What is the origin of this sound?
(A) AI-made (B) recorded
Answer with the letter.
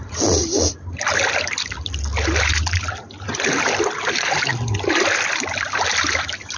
B